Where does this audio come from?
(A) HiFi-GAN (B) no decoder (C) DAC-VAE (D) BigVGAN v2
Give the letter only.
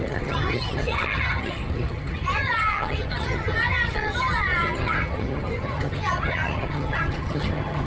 A